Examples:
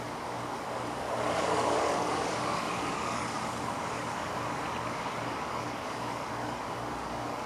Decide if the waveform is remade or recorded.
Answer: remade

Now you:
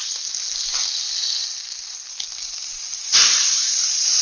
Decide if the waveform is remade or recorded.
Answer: recorded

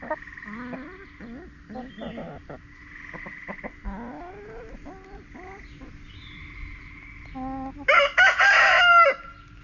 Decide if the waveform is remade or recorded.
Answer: recorded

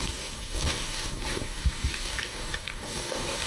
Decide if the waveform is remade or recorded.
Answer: remade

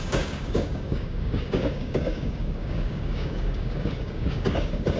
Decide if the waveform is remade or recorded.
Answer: remade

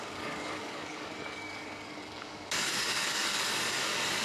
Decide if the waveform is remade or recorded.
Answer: remade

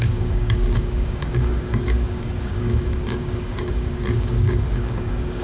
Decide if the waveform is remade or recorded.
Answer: remade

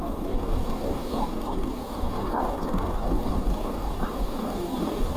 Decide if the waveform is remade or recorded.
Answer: remade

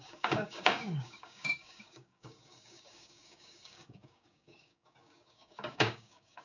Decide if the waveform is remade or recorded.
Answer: remade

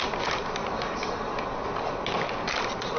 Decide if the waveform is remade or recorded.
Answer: recorded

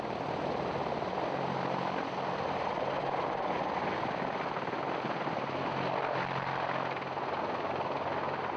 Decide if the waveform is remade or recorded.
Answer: recorded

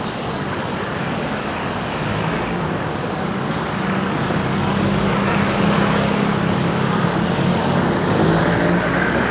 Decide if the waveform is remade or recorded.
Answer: remade